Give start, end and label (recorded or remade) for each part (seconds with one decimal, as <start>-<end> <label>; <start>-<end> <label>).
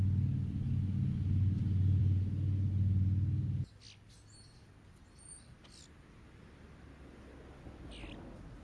0.0-8.6 recorded